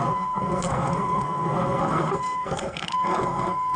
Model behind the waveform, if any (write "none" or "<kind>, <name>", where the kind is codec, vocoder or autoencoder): codec, SNAC